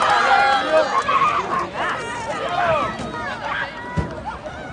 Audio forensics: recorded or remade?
recorded